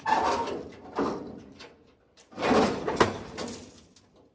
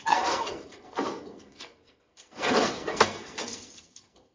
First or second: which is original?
first